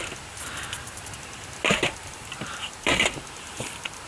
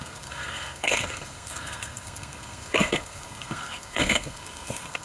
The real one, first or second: first